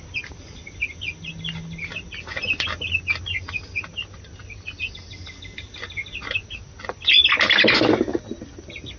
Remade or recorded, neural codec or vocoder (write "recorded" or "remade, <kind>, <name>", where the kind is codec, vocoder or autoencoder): recorded